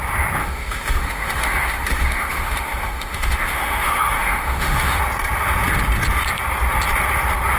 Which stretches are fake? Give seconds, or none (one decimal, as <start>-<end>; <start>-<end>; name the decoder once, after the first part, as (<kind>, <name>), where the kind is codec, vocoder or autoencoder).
0.4-5.0 (autoencoder, DAC-VAE)